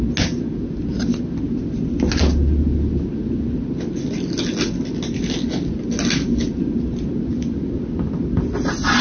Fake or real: real